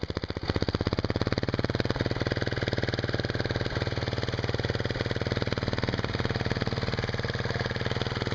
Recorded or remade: recorded